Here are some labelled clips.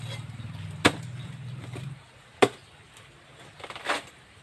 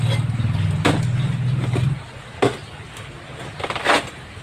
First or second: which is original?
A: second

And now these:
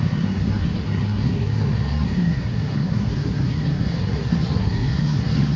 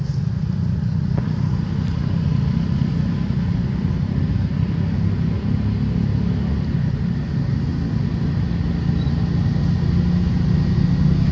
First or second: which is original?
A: second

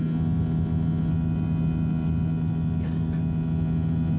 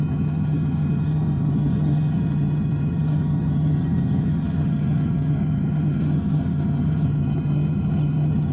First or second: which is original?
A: first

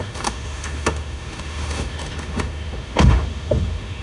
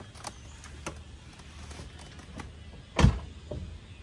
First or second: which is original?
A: second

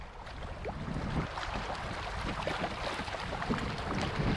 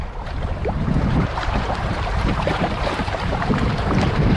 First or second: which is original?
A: first